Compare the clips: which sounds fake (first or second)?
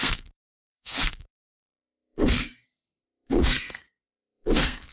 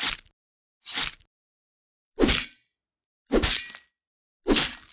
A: first